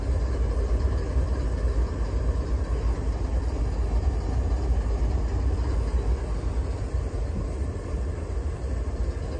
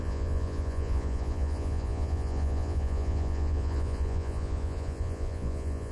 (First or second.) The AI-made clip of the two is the second